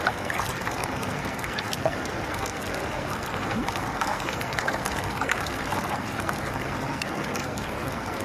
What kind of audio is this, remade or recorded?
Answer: remade